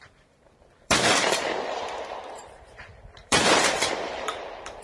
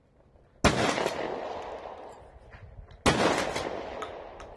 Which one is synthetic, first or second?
first